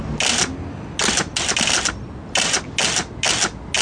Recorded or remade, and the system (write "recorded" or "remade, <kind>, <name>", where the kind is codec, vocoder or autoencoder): recorded